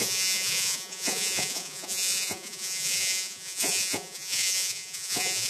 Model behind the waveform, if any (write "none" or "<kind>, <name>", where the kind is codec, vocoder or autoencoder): vocoder, Vocos